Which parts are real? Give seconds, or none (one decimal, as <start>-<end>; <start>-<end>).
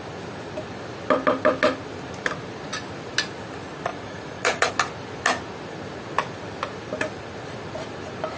0.0-3.9; 4.7-8.4